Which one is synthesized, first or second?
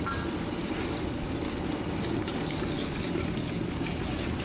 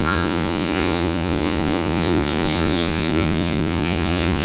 second